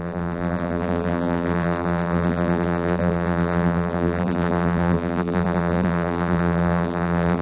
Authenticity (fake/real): fake